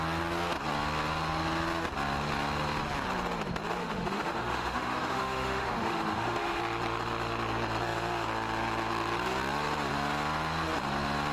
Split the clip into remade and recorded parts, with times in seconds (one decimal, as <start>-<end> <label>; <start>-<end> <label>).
0.0-3.8 recorded; 3.8-6.6 remade; 6.6-11.3 recorded